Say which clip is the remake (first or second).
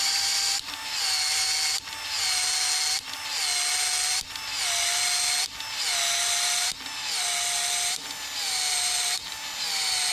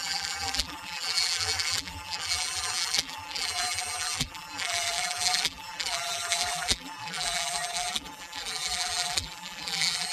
second